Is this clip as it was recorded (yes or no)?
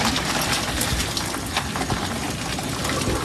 yes